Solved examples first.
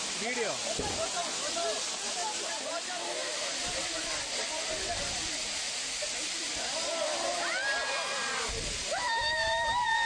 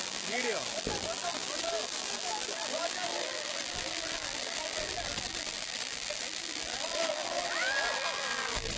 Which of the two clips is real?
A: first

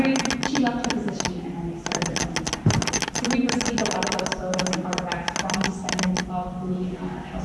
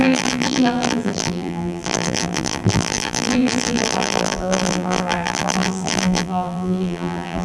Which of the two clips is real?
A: first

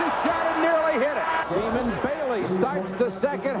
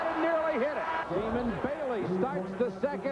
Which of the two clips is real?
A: second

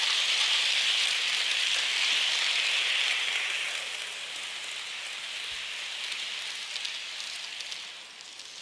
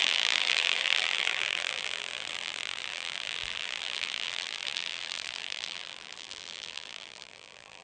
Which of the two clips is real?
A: first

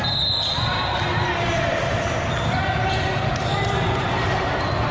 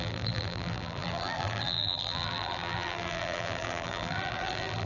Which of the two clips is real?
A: first